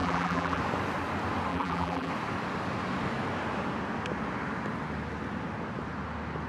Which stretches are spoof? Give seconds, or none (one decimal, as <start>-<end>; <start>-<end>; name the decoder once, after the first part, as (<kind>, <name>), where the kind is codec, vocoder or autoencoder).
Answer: 0.0-0.6 (vocoder, BigVGAN v2); 1.5-2.1